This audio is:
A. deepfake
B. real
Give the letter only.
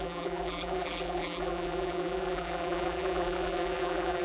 A